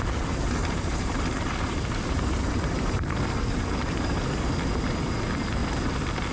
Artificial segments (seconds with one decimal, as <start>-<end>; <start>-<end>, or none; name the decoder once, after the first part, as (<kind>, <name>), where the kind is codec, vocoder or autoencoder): 0.6-4.4 (vocoder, BigVGAN v2); 5.6-6.3